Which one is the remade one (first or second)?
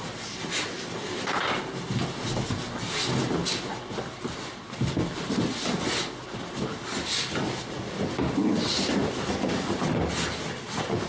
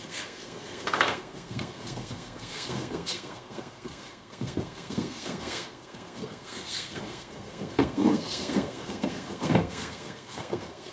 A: second